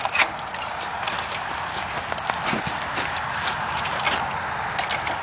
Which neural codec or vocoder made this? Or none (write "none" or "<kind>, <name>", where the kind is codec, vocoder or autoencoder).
none